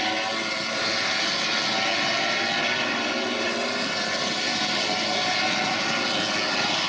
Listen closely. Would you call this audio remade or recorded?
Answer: recorded